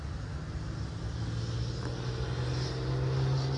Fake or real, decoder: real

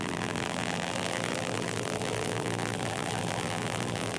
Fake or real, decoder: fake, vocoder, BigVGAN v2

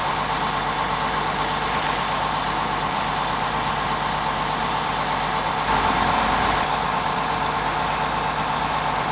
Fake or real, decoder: fake, vocoder, BigVGAN v2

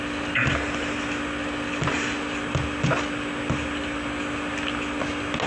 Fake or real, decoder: real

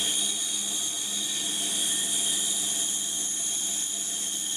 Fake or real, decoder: real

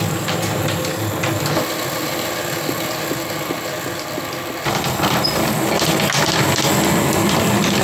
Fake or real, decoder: real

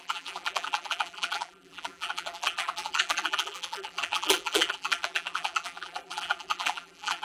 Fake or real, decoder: fake, vocoder, BigVGAN v2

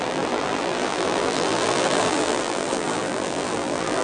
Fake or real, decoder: fake, vocoder, BigVGAN v2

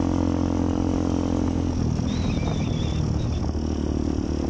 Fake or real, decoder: real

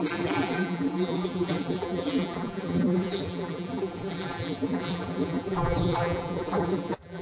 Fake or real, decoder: fake, vocoder, BigVGAN v2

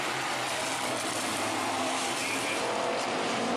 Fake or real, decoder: fake, vocoder, BigVGAN v2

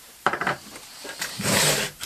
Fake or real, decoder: fake, vocoder, BigVGAN v2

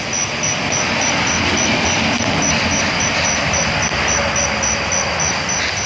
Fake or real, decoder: real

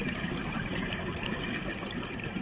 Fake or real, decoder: fake, vocoder, BigVGAN v2